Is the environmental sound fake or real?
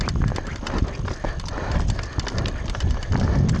real